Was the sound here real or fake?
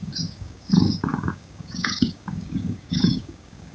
fake